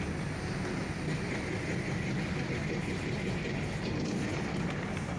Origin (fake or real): real